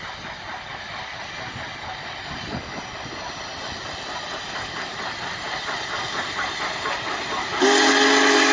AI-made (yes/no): no